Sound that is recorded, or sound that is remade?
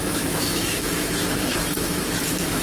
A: remade